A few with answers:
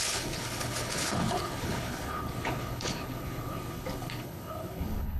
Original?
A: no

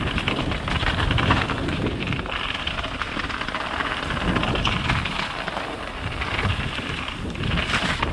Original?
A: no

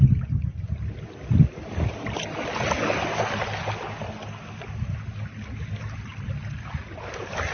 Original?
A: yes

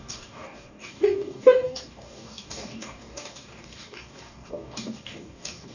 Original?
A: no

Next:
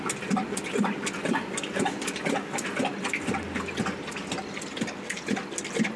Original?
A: yes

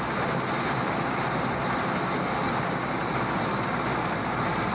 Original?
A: yes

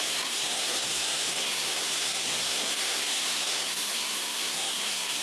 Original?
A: no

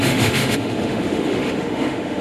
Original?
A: no